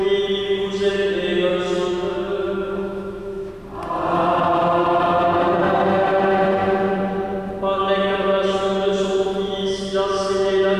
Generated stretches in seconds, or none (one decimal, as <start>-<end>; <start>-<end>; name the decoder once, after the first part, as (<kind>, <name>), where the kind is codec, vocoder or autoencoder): 1.5-3.5 (autoencoder, DAC-VAE)